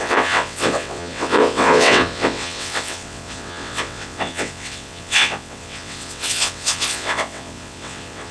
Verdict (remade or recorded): remade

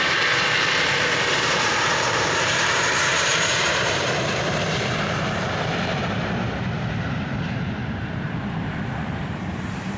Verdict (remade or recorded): remade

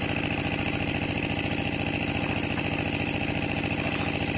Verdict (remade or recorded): recorded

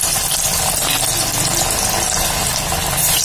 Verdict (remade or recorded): recorded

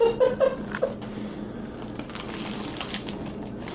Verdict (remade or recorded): recorded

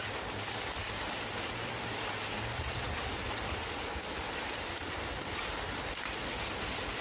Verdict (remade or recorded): recorded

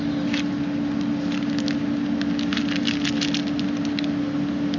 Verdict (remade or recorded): recorded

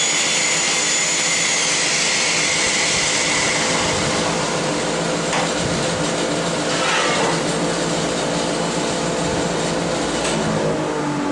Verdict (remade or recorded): recorded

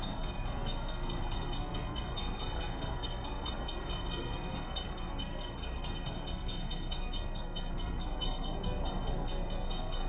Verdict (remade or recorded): remade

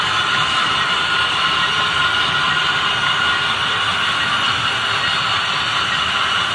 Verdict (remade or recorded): recorded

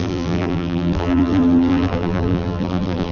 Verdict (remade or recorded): remade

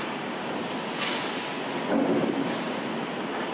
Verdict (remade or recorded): recorded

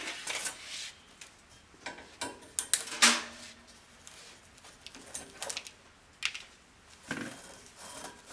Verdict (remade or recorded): recorded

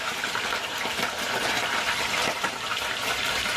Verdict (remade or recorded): remade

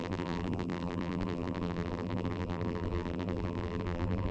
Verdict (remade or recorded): remade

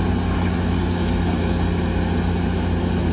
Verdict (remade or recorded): recorded